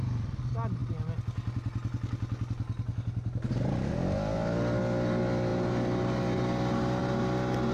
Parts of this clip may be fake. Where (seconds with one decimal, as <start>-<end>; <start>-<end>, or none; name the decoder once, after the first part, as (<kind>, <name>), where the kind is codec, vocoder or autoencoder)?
none